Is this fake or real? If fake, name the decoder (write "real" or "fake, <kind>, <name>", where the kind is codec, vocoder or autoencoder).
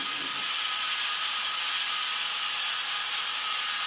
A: real